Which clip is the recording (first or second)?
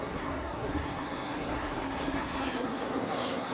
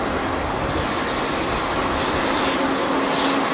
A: second